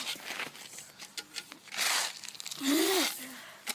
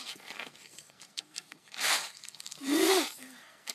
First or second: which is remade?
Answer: second